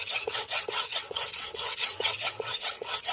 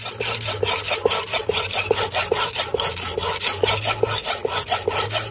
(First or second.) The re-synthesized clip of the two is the first